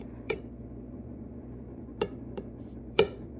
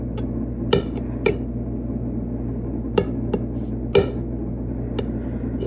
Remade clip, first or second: first